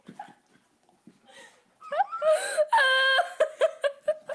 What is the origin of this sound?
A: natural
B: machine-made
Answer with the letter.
A